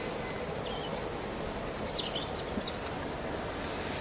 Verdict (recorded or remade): recorded